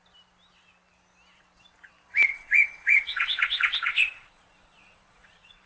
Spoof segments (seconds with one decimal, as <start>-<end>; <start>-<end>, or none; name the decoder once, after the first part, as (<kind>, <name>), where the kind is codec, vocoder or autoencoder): 2.3-5.7 (vocoder, Vocos)